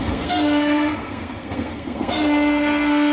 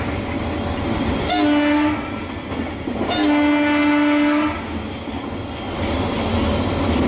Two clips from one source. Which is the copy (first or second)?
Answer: first